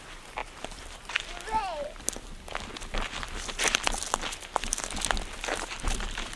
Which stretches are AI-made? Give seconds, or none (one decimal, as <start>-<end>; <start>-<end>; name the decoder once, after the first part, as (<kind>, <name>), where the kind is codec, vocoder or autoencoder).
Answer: none